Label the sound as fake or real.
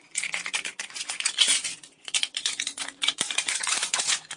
fake